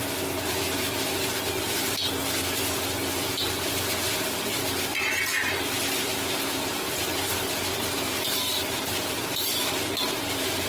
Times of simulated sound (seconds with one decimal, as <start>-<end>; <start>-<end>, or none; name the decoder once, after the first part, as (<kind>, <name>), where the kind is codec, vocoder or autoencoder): 0.0-2.2 (vocoder, BigVGAN v2); 3.5-10.7